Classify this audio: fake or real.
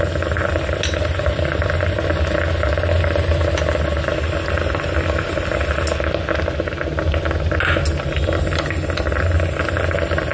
real